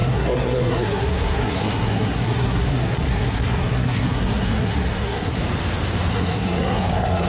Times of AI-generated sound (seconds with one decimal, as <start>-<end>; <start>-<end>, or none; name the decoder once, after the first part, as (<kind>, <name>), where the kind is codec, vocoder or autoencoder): 0.0-5.4 (codec, SNAC); 6.1-7.3